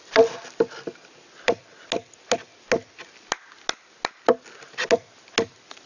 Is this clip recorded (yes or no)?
yes